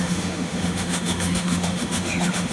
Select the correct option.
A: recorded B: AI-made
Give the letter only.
B